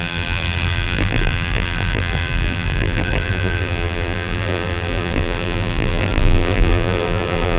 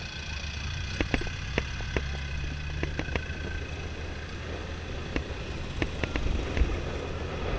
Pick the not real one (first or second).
first